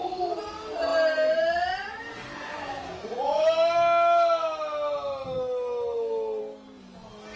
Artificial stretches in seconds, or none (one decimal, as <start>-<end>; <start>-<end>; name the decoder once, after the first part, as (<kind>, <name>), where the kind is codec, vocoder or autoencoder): none